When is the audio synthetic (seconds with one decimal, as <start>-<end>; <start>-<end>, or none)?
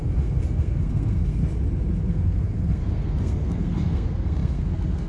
0.0-1.4; 2.1-5.1